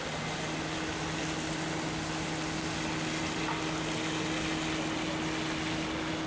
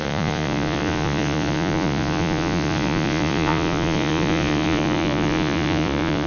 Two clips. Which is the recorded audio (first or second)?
first